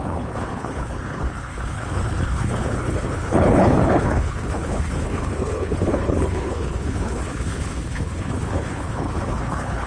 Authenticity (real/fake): fake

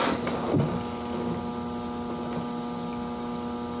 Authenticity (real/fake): real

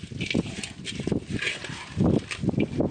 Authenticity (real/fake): real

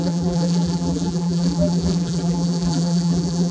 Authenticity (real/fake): fake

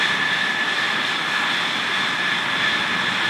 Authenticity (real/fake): real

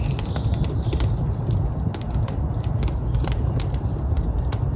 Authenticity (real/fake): real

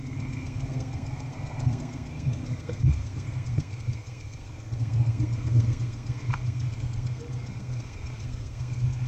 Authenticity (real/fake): fake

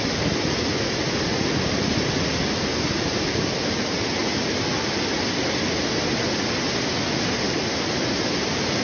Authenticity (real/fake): real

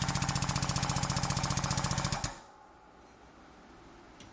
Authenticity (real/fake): real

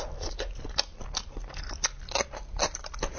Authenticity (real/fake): real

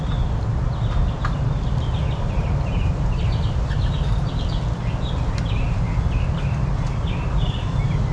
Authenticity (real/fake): real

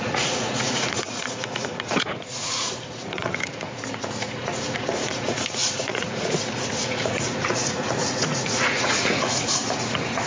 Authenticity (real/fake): fake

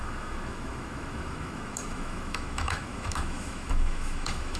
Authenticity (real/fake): fake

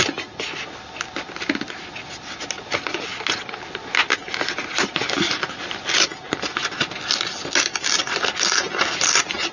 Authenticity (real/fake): real